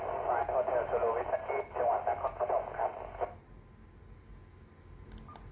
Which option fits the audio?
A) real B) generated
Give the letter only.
A